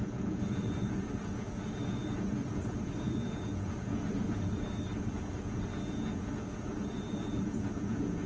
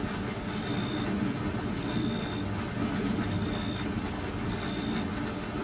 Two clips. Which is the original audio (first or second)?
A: second